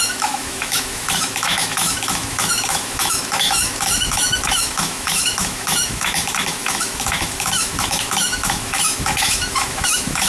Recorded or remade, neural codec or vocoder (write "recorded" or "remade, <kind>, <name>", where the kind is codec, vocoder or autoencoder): remade, autoencoder, DAC-VAE